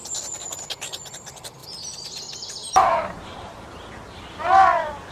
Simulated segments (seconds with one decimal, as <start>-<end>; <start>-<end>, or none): 2.6-3.6